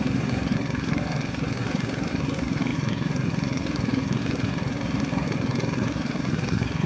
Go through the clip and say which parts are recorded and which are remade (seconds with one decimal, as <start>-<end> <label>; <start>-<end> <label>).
0.0-6.9 remade